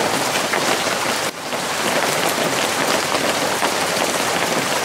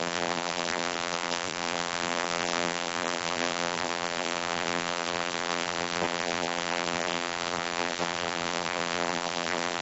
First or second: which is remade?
second